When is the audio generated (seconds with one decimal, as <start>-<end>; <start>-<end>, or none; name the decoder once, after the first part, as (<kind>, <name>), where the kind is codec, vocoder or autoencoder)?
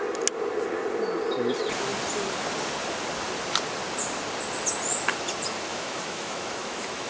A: 5.7-7.1 (autoencoder, DAC-VAE)